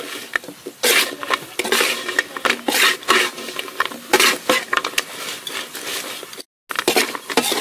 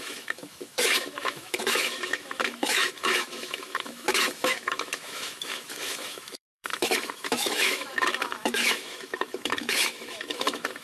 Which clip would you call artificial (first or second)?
second